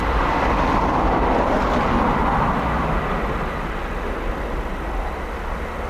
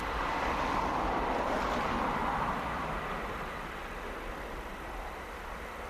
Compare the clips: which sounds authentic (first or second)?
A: first